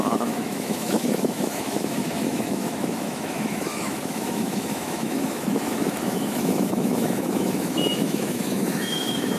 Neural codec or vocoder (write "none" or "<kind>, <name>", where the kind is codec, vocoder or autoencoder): autoencoder, DAC-VAE